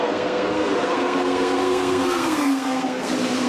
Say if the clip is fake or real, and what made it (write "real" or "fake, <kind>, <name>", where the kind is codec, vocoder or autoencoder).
fake, codec, SNAC